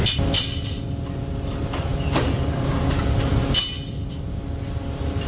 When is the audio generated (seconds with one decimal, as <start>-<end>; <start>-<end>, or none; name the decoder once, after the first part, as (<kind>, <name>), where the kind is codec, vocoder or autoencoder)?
none